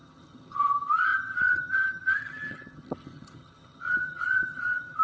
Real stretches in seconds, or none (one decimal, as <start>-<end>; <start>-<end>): none